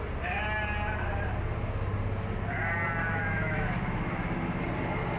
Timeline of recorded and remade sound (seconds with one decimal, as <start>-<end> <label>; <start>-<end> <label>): 0.0-3.0 recorded; 3.0-4.7 remade; 4.7-5.2 recorded

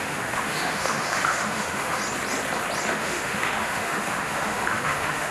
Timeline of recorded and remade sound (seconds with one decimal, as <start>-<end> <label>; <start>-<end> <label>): 0.0-2.0 remade; 2.0-2.9 recorded; 2.9-5.3 remade